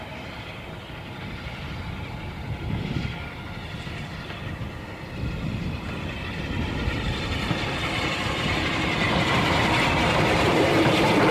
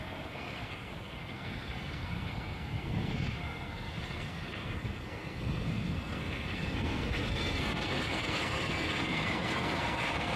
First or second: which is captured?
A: first